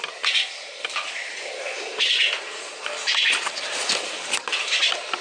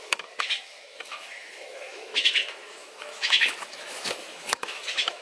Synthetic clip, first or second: second